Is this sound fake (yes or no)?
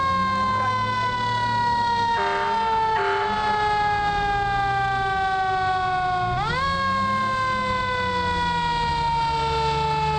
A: no